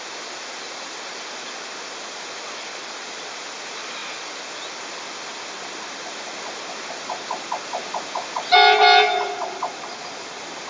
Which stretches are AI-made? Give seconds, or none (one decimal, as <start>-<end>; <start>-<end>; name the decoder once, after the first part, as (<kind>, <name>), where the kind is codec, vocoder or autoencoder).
none